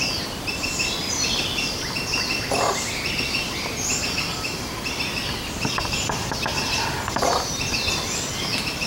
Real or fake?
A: fake